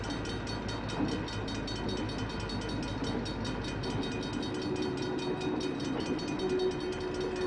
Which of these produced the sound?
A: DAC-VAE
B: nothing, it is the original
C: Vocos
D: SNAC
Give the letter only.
B